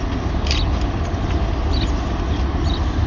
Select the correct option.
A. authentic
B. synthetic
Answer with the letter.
A